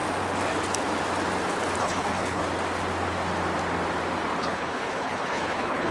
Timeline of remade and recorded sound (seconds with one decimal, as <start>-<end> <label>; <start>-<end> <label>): 0.0-1.8 recorded; 1.8-2.4 remade; 2.4-4.4 recorded; 4.4-5.9 remade